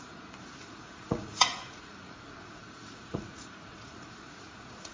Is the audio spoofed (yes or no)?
yes